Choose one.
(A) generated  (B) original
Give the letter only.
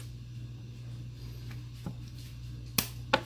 B